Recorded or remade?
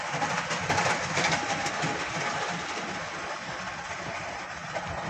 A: recorded